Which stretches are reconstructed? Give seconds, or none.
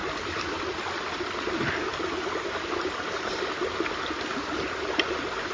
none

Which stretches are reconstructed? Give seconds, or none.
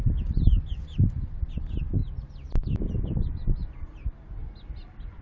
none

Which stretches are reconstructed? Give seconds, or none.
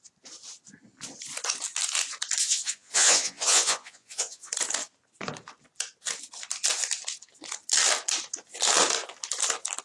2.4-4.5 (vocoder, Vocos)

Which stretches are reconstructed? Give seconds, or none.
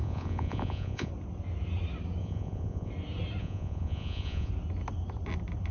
0.0-1.1 (vocoder, Vocos); 2.2-2.9; 3.4-4.5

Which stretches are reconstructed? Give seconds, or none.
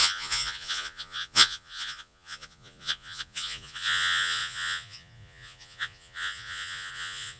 0.0-7.4 (vocoder, Vocos)